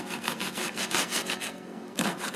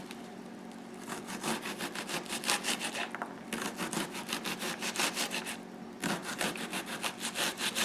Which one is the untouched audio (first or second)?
second